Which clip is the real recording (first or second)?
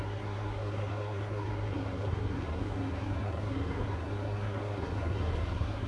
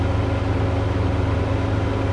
second